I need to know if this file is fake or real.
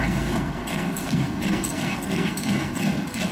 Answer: fake